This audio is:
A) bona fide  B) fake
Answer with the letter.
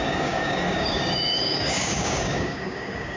B